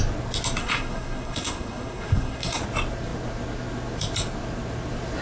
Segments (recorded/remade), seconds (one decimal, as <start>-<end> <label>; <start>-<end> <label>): 0.0-0.6 recorded; 0.6-2.6 remade; 2.6-5.2 recorded